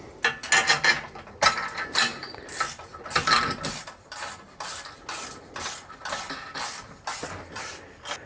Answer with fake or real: real